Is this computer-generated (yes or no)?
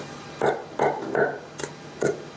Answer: no